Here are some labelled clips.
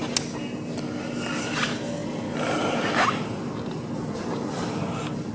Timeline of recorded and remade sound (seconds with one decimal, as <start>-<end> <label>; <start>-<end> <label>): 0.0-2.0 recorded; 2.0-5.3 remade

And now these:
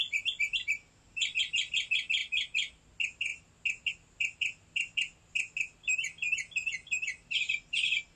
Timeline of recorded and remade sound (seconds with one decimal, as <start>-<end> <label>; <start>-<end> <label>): 0.0-8.2 recorded

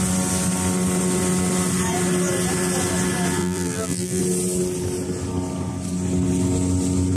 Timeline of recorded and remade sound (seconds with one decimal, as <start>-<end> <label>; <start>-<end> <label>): 0.0-3.4 recorded; 3.4-4.2 remade; 4.2-7.2 recorded

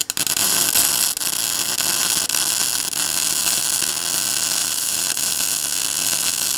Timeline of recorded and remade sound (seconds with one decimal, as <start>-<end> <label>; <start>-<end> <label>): 0.0-4.6 recorded; 4.6-5.3 remade; 5.3-6.6 recorded